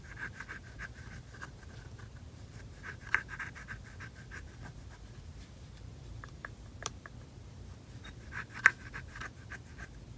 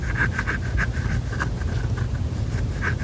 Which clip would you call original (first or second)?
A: second